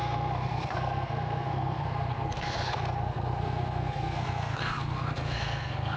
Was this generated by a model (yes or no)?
yes